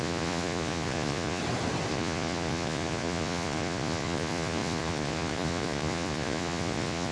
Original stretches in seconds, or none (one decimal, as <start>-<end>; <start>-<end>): 1.4-1.9